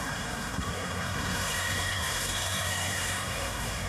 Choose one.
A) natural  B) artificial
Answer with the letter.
B